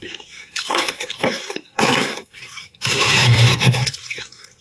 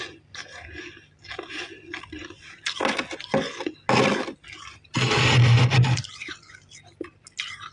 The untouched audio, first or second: second